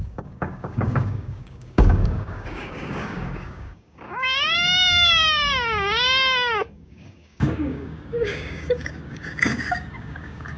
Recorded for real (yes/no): no